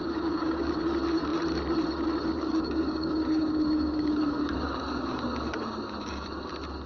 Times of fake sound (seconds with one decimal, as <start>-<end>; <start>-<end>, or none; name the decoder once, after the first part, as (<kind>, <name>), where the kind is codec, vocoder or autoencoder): 0.0-0.7 (codec, DAC); 2.4-6.5